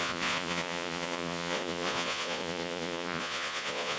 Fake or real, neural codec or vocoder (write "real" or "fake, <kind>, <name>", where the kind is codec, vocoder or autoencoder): fake, vocoder, Vocos